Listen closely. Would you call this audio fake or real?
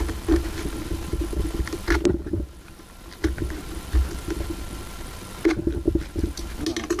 real